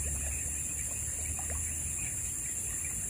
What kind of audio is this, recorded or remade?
recorded